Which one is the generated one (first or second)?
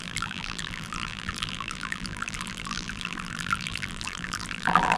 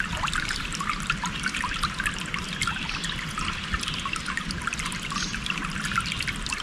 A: first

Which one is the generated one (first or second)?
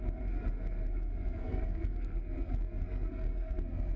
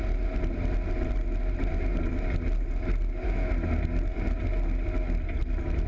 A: first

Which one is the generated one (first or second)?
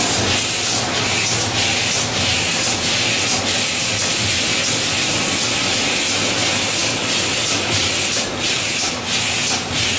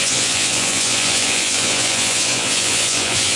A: second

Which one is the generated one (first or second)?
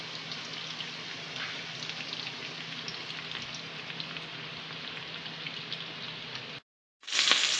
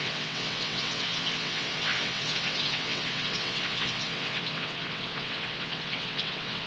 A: second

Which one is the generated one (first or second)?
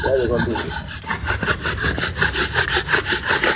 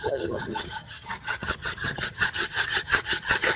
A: second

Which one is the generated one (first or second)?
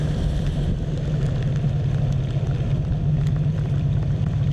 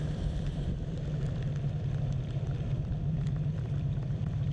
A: second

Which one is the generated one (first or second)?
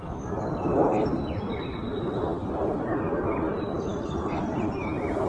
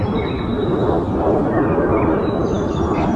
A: first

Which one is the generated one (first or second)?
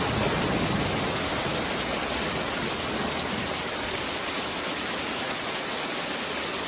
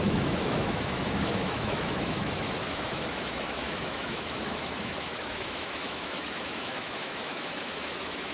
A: second